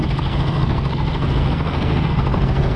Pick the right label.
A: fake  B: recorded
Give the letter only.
A